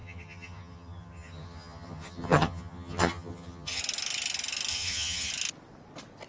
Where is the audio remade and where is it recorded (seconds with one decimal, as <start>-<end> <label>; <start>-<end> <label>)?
0.0-3.8 remade; 3.8-4.7 recorded; 4.7-5.3 remade; 5.3-6.3 recorded